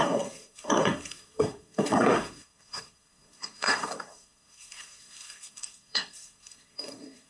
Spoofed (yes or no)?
yes